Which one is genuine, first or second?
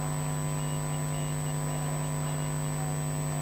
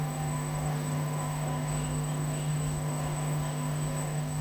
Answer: first